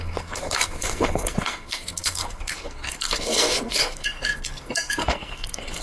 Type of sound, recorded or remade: remade